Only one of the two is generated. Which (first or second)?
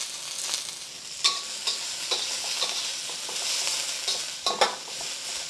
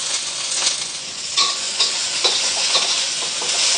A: second